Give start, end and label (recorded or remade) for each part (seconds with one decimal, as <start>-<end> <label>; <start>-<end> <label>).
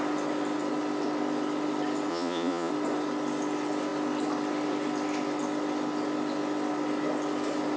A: 0.0-2.1 recorded; 2.1-2.7 remade; 2.7-7.8 recorded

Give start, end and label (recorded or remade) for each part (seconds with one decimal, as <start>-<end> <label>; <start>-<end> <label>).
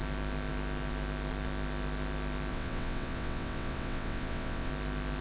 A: 0.0-2.5 recorded; 2.5-4.7 remade; 4.7-5.2 recorded